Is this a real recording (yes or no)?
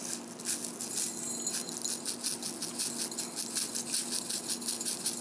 yes